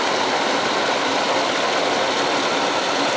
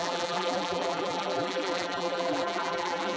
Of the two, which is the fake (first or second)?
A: second